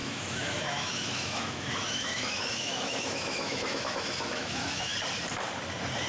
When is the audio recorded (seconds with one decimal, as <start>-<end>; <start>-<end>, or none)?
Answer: 4.9-6.1